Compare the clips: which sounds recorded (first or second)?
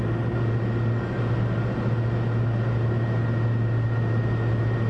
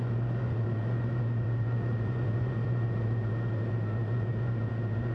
first